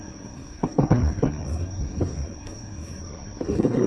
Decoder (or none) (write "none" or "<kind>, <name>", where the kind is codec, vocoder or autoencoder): codec, SNAC